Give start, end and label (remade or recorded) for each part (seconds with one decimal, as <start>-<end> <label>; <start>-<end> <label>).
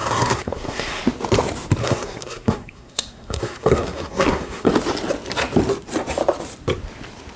0.0-1.0 remade; 1.0-1.8 recorded; 1.8-4.7 remade; 4.7-7.4 recorded